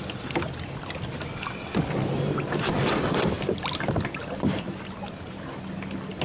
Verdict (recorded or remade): recorded